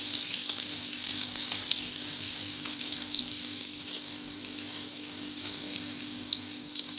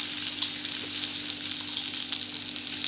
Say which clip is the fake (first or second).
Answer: first